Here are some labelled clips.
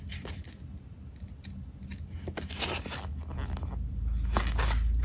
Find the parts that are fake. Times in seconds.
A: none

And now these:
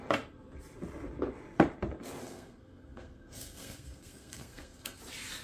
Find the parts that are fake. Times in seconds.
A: 2.2-5.0

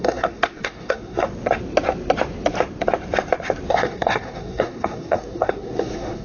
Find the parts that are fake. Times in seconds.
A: 0.0-1.3; 3.7-6.2

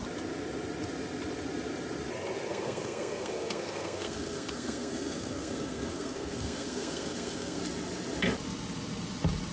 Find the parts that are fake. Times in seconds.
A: 2.5-7.6

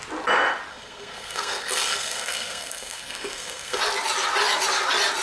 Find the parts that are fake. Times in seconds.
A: 0.7-3.8

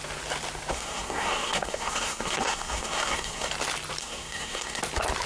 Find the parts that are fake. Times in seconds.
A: 0.7-3.5; 4.0-4.8

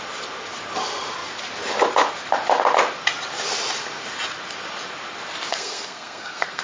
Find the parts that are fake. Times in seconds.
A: 5.5-6.6